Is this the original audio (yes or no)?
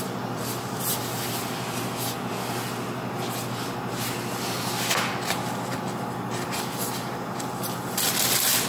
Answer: yes